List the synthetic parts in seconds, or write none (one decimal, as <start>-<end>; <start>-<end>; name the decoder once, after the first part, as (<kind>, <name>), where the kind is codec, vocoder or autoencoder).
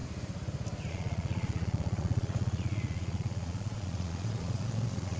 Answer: 0.9-5.2 (vocoder, Vocos)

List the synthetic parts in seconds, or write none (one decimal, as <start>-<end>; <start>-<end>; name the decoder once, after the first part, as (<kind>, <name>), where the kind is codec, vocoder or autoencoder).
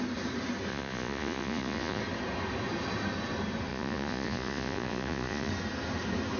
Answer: 0.7-2.0 (vocoder, Vocos); 3.7-5.5